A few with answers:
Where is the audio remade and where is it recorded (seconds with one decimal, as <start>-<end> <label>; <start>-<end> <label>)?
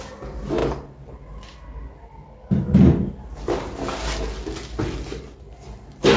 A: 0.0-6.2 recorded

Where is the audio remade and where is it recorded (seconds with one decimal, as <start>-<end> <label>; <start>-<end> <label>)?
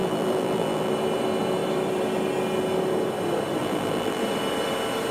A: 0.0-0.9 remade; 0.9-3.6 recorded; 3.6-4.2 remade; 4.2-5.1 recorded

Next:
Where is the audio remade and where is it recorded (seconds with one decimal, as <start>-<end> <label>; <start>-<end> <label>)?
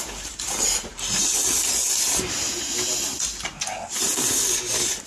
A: 0.0-0.9 remade; 0.9-4.0 recorded; 4.0-5.1 remade